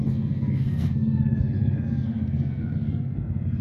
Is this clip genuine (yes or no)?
no